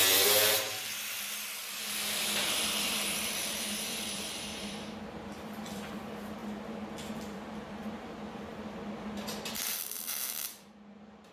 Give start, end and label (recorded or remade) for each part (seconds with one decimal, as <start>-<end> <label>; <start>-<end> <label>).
0.0-6.4 remade; 6.4-7.1 recorded; 7.1-11.3 remade